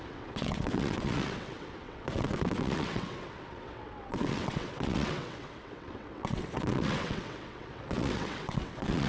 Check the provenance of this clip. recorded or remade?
remade